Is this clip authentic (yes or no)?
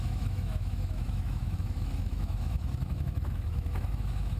no